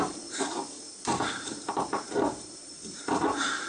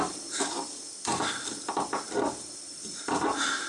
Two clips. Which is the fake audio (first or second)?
first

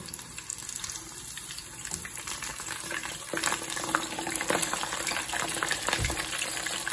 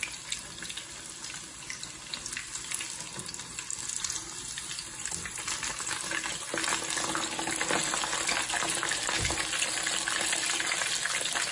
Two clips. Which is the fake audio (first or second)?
first